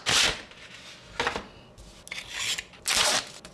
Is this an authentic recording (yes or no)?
yes